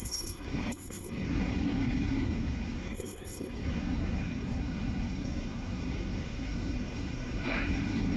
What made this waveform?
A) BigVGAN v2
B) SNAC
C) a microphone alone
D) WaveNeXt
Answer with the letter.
B